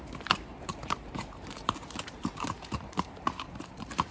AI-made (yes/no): yes